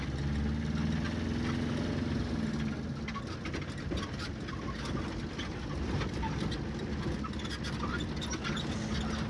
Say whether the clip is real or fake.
real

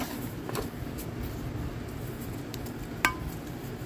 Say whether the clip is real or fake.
real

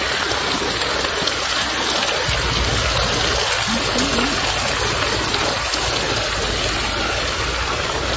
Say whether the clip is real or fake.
real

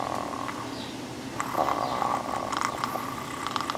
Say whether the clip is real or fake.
real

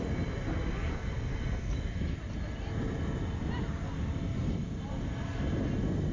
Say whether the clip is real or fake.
real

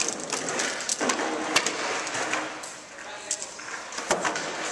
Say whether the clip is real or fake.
real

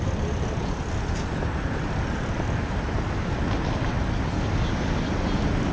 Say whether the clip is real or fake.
real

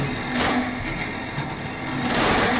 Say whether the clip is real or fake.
real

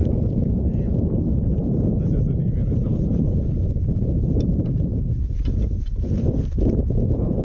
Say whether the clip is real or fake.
fake